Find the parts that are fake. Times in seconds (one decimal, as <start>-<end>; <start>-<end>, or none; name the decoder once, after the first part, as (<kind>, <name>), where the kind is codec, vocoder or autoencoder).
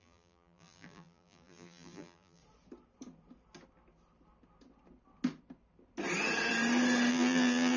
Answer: 0.0-2.4 (vocoder, BigVGAN v2); 7.1-7.8